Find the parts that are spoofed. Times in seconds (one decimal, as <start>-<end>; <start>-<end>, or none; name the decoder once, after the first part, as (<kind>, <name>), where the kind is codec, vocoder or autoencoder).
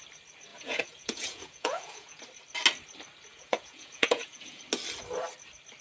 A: 0.5-2.2 (vocoder, Vocos); 3.3-4.6